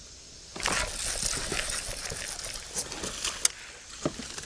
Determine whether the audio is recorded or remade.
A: recorded